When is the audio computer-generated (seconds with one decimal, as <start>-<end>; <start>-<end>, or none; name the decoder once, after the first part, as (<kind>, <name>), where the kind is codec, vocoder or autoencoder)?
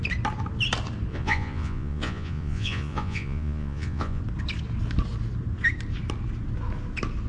1.1-4.2 (vocoder, Vocos)